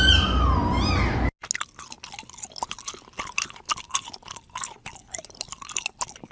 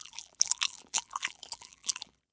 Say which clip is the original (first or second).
first